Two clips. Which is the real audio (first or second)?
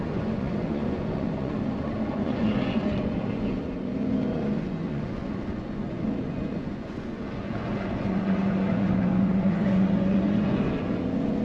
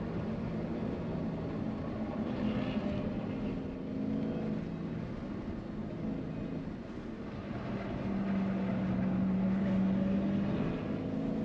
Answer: second